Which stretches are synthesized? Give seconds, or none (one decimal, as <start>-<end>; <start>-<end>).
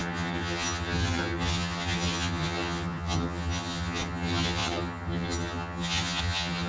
0.0-6.7